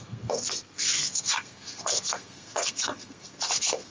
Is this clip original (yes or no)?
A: no